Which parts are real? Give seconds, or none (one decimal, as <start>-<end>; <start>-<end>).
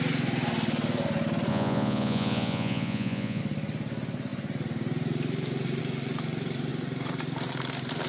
0.0-1.5; 3.4-8.1